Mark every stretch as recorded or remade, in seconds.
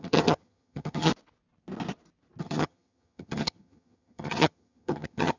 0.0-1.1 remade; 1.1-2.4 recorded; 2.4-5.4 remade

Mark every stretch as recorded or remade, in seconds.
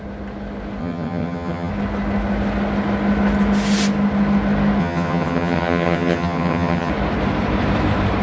0.0-0.8 recorded; 0.8-1.7 remade; 1.7-4.8 recorded; 4.8-6.9 remade; 6.9-8.2 recorded